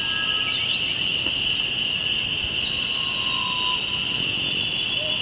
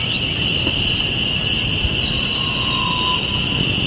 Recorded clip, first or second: first